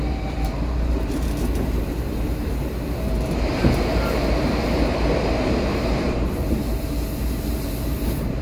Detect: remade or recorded remade